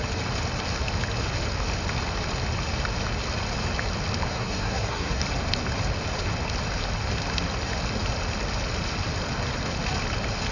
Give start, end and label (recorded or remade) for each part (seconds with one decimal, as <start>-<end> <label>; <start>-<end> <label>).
0.0-4.3 recorded; 4.3-5.2 remade; 5.2-10.5 recorded